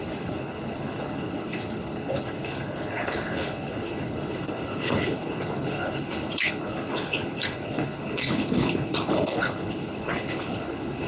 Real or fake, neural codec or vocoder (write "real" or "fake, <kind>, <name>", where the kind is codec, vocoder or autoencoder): fake, codec, HILCodec